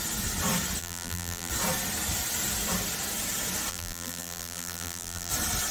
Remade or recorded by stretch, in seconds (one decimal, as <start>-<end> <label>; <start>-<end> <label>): 0.0-0.8 recorded; 0.8-1.5 remade; 1.5-3.7 recorded; 3.7-5.3 remade; 5.3-5.7 recorded